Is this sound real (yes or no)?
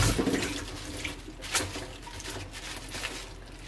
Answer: yes